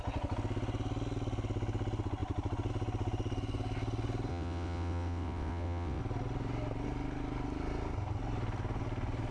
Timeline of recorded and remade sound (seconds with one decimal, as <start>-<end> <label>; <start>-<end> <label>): 0.0-4.3 recorded; 4.3-6.0 remade; 6.0-9.3 recorded

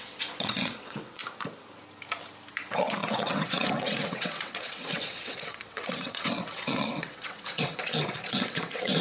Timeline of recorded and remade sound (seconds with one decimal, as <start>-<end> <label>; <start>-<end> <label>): 0.0-1.2 remade; 1.2-2.5 recorded; 2.5-9.0 remade

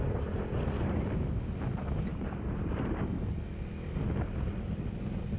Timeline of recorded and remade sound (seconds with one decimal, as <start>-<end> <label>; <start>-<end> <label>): 0.0-5.4 recorded

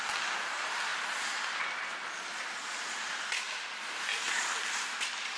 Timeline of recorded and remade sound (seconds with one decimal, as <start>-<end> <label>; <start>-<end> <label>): 0.0-5.4 recorded